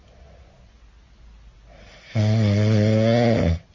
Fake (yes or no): no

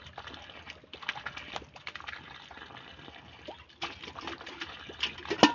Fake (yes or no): no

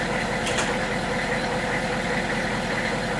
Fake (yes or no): no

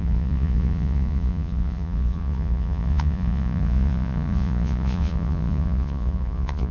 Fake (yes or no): yes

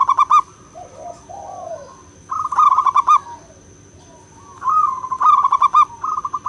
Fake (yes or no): no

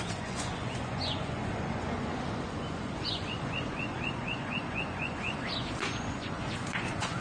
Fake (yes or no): yes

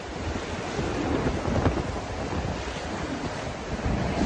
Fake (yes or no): no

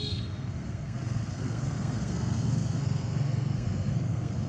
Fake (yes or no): yes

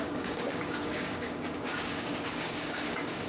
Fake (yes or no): yes